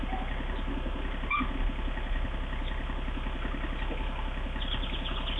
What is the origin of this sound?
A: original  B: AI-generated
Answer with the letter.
A